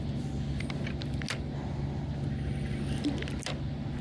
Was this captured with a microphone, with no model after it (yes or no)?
yes